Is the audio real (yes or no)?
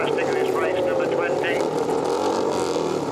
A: yes